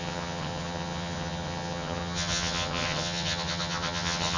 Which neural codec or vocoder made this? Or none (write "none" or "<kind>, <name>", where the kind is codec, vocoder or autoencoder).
vocoder, HiFi-GAN